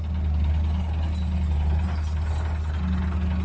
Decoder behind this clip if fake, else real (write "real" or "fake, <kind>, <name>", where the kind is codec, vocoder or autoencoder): real